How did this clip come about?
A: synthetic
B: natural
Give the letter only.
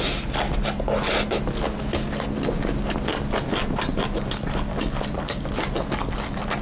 B